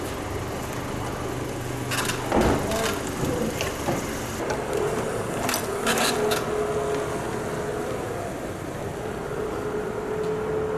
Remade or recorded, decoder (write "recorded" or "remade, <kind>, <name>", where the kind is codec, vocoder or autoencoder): recorded